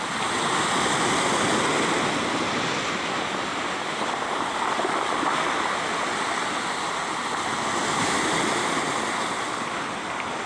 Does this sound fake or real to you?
real